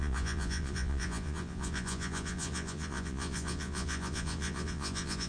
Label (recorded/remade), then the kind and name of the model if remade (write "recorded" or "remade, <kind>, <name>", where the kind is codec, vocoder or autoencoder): remade, vocoder, Vocos